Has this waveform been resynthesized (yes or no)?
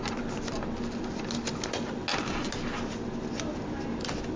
no